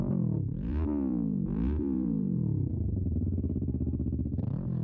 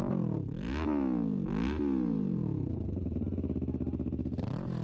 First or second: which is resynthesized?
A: first